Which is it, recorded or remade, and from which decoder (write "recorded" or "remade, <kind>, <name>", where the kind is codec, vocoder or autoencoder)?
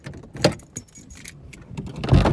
recorded